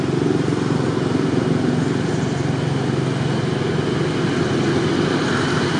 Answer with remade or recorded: recorded